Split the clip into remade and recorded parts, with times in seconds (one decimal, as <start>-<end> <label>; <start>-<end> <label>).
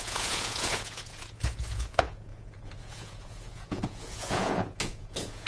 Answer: 0.0-5.5 remade